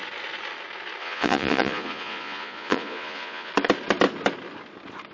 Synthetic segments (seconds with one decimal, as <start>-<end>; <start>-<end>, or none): 1.0-3.5

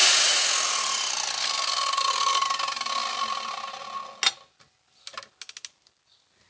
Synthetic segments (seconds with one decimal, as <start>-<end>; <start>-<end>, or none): 0.0-1.1

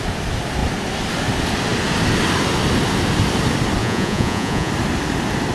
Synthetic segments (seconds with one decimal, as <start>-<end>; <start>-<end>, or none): 3.8-4.7

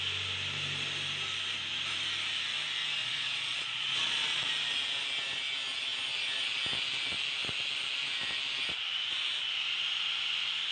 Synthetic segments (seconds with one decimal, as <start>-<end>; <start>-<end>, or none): 3.0-4.5

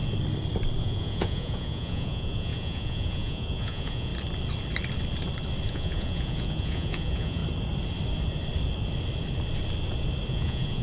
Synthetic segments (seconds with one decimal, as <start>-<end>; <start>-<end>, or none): 0.8-4.1; 5.7-7.4; 10.3-10.8

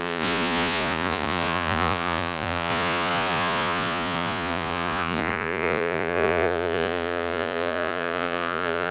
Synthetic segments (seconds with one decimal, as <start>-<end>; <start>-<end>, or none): 0.0-8.9

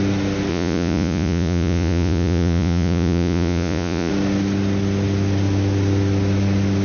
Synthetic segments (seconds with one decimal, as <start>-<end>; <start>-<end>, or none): 0.5-4.1